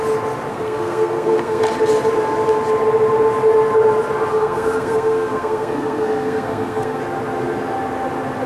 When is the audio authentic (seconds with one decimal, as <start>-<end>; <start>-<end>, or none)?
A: 0.0-0.5; 1.6-4.3; 7.0-8.5